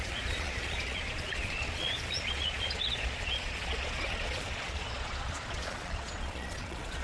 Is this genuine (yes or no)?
no